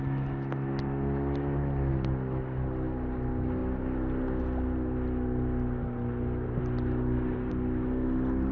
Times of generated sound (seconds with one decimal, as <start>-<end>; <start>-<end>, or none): none